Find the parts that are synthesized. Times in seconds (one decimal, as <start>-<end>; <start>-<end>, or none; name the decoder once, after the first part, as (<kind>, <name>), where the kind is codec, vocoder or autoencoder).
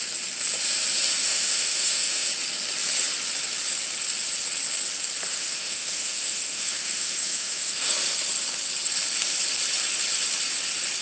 1.2-2.3 (autoencoder, DAC-VAE); 5.3-7.9